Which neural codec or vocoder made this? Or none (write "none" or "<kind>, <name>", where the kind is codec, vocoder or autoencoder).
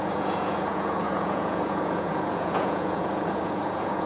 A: vocoder, Vocos